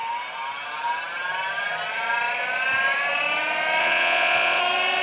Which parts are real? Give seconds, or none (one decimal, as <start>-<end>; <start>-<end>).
0.0-3.8; 4.6-5.0

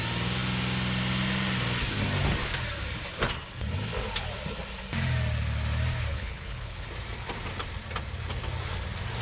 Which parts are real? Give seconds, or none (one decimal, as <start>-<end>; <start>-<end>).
0.0-6.1; 6.9-9.2

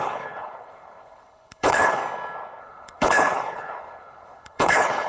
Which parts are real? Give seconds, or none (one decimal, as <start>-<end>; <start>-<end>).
2.0-2.6

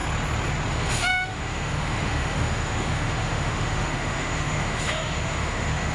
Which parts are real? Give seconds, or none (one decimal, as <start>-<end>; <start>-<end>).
0.0-0.7

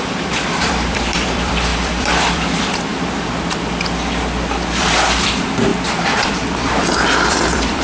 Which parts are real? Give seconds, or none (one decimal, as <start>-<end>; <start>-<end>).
2.9-4.8; 5.7-6.3

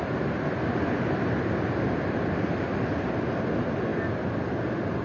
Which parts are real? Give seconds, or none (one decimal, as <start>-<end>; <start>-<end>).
0.0-5.0

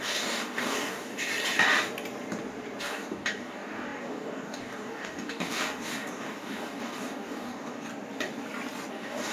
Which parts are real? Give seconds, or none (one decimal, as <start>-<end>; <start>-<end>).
1.3-2.8; 7.9-8.9